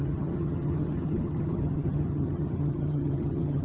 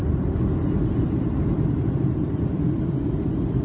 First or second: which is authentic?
second